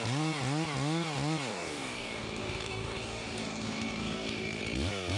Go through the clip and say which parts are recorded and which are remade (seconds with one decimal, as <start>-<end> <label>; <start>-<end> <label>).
0.0-1.5 recorded; 1.5-4.6 remade; 4.6-5.2 recorded